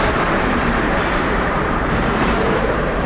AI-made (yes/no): yes